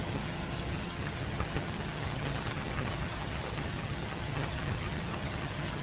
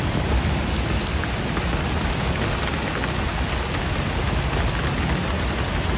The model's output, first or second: first